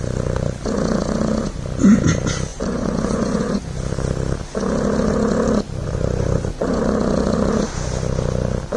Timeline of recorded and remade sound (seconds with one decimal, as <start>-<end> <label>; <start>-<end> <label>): 0.0-2.5 recorded; 2.5-3.6 remade; 3.6-5.8 recorded; 5.8-6.8 remade; 6.8-8.8 recorded

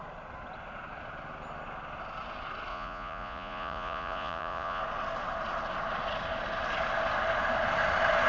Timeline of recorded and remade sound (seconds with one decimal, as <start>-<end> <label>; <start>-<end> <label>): 0.0-2.7 recorded; 2.7-4.8 remade; 4.8-8.3 recorded

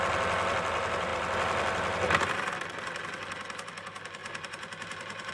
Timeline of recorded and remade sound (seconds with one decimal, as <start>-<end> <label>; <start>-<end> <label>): 0.0-4.2 recorded; 4.2-5.3 remade

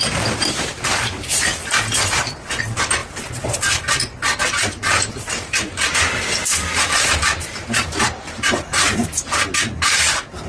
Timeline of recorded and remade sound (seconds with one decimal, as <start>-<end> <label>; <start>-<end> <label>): 0.0-1.5 remade; 1.5-2.6 recorded; 2.6-10.5 remade